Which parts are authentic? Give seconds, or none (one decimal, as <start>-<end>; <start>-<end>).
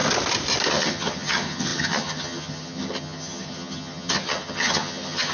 0.0-0.7